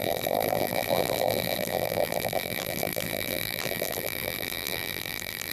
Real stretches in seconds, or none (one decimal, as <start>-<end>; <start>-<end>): none